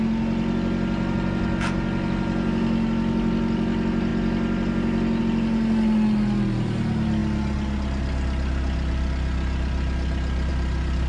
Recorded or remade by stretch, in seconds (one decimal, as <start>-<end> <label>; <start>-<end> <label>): 0.0-11.1 recorded